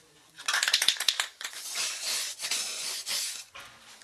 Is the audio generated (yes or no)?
yes